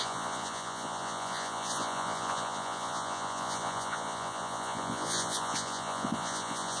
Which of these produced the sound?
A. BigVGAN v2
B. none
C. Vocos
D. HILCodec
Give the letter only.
C